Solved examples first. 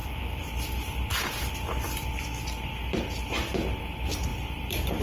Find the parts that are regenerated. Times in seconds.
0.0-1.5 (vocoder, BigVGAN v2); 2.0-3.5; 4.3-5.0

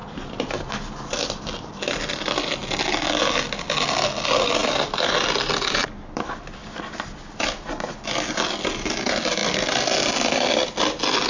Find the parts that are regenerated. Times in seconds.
0.0-2.4 (vocoder, BigVGAN v2); 5.8-6.8; 9.4-10.8

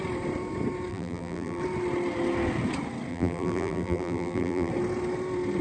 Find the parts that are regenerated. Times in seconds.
0.9-1.6 (vocoder, BigVGAN v2); 3.1-4.7

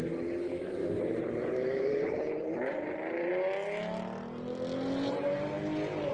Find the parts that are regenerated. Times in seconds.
0.8-3.3 (vocoder, BigVGAN v2)

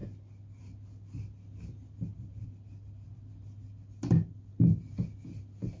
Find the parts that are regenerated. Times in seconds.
2.1-4.5 (vocoder, BigVGAN v2)

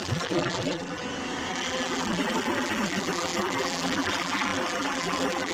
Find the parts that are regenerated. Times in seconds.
0.0-1.0 (vocoder, BigVGAN v2); 1.5-5.5